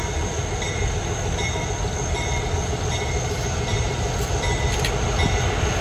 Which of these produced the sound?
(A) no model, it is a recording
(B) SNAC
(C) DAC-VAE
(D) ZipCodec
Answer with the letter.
A